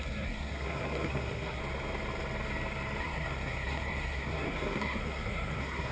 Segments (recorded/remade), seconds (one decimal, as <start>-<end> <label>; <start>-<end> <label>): 0.0-1.6 remade; 1.6-3.0 recorded; 3.0-5.9 remade